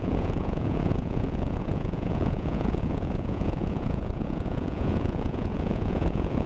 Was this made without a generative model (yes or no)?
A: no